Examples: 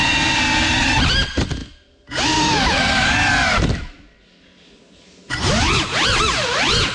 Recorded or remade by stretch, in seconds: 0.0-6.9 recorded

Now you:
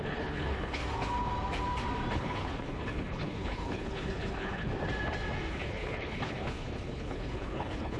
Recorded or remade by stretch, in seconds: 0.0-0.8 remade; 0.8-2.1 recorded; 2.1-4.7 remade; 4.7-5.5 recorded; 5.5-8.0 remade

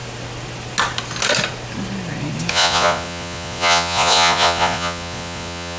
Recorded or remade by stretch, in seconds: 0.0-2.5 recorded; 2.5-5.8 remade

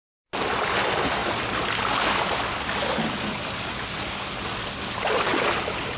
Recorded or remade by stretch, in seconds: 0.0-6.0 recorded

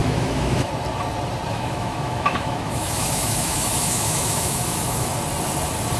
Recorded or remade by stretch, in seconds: 0.0-0.7 remade; 0.7-1.5 recorded; 1.5-5.1 remade; 5.1-6.0 recorded